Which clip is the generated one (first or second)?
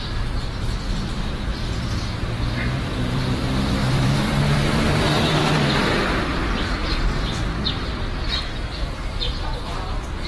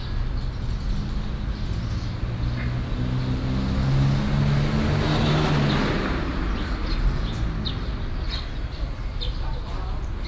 first